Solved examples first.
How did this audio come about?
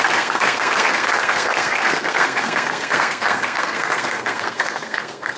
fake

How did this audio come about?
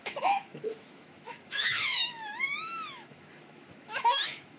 fake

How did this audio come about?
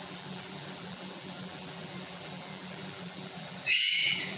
fake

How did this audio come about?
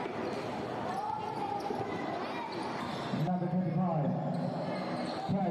real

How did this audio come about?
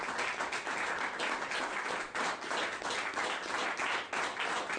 real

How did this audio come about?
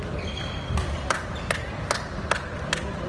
real